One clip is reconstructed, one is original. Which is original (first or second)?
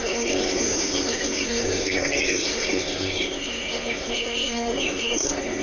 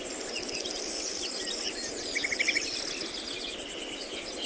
second